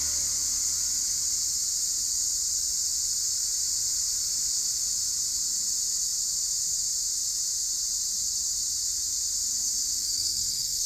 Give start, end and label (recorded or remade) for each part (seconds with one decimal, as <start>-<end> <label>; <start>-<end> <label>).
0.0-10.0 recorded; 10.0-10.9 remade